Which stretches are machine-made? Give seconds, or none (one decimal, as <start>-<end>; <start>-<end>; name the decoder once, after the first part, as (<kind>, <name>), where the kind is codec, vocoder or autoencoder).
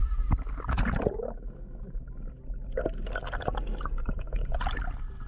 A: none